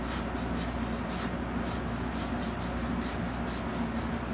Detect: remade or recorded recorded